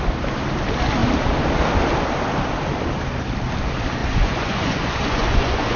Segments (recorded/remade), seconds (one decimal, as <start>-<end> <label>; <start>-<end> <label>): 0.0-4.0 recorded; 4.0-5.8 remade